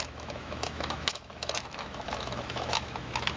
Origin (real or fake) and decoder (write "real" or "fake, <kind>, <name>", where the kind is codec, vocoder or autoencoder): fake, autoencoder, DAC-VAE